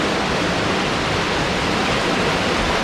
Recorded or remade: remade